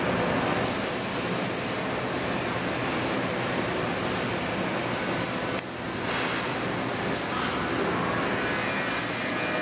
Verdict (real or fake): real